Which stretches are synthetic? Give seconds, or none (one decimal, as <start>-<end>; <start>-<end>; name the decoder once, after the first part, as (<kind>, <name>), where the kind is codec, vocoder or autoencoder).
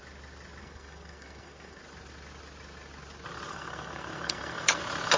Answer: 0.6-1.8 (codec, SNAC); 3.5-4.8